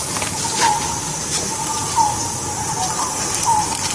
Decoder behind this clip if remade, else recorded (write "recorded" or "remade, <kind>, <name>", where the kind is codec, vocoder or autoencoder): recorded